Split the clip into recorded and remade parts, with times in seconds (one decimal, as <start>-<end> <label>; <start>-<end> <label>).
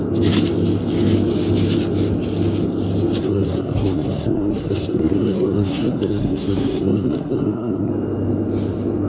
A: 0.0-3.2 recorded; 3.2-7.9 remade; 7.9-9.1 recorded